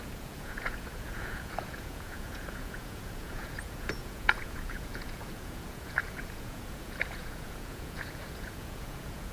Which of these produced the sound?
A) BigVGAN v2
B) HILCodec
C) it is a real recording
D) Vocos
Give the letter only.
D